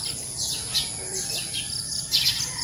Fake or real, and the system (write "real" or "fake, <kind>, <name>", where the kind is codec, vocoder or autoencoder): real